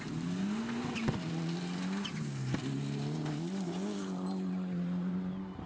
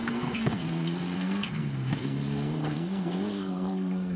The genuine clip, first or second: first